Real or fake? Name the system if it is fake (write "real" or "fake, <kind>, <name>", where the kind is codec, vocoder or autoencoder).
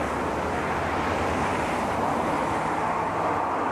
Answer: real